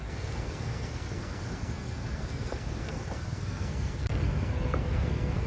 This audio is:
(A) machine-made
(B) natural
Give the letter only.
A